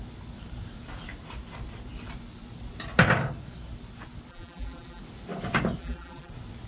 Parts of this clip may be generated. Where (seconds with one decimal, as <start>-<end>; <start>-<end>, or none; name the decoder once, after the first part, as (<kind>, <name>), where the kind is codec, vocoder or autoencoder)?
4.3-5.0 (vocoder, BigVGAN v2); 5.8-6.3